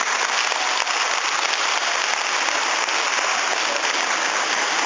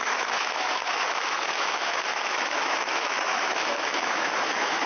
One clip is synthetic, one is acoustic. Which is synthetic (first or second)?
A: second